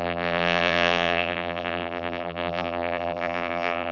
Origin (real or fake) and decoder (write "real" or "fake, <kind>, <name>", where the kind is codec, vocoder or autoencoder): fake, vocoder, BigVGAN v2